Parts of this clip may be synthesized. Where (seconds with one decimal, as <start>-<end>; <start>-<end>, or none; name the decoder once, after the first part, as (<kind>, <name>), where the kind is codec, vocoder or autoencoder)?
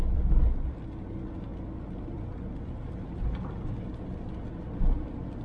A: 1.5-4.7 (vocoder, BigVGAN v2)